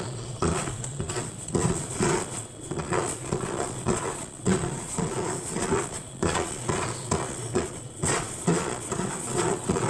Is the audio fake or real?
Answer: fake